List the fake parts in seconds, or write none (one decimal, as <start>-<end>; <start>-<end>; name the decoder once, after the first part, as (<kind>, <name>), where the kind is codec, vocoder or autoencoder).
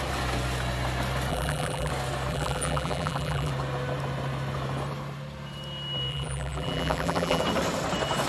1.3-1.9 (vocoder, BigVGAN v2); 2.3-3.5; 6.1-7.4